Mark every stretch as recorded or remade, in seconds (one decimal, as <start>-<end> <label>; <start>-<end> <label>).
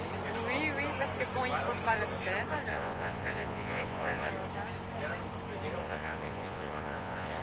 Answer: 0.0-2.7 recorded; 2.7-4.3 remade; 4.3-5.8 recorded; 5.8-7.4 remade